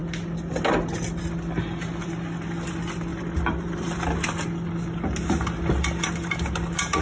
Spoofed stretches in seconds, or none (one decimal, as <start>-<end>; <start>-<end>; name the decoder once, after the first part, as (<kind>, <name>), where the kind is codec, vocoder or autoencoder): 3.1-4.1 (vocoder, BigVGAN v2)